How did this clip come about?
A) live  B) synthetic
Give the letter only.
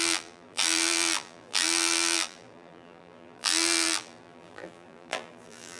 B